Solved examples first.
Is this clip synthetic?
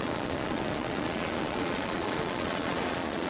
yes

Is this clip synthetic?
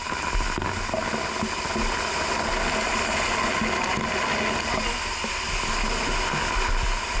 no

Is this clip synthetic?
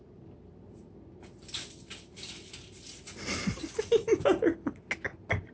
no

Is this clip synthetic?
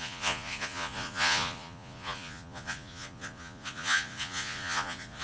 yes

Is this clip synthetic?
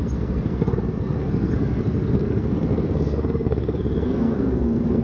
yes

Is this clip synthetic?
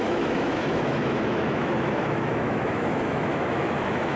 yes